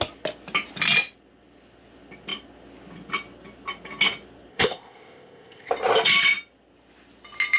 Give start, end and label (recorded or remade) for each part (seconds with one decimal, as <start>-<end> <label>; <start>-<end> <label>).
0.0-4.5 recorded; 4.5-5.7 remade; 5.7-7.6 recorded